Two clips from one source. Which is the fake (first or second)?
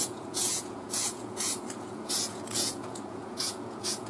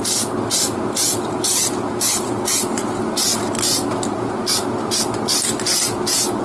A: first